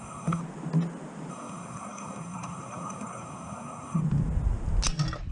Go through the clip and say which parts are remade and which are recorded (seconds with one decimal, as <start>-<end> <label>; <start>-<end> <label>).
0.0-0.4 remade; 0.4-1.3 recorded; 1.3-4.0 remade; 4.0-5.3 recorded